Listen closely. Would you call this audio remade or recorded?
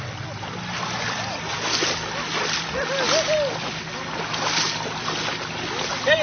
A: recorded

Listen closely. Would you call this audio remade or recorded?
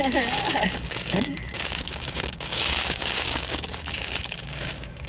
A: remade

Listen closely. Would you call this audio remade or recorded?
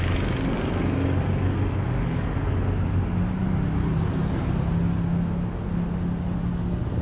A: recorded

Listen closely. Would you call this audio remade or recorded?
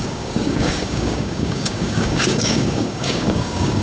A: remade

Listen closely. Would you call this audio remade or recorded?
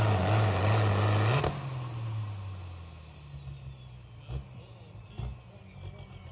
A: recorded